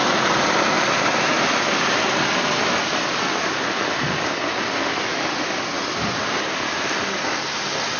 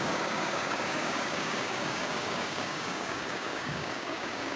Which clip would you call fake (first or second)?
second